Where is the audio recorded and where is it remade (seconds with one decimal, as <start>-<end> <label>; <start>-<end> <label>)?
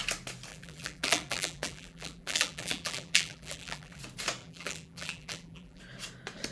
0.0-0.5 recorded; 0.5-4.0 remade; 4.0-4.4 recorded; 4.4-5.8 remade; 5.8-6.5 recorded